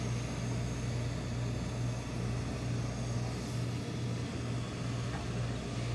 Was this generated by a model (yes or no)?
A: no